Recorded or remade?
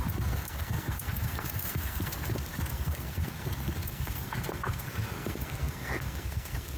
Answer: remade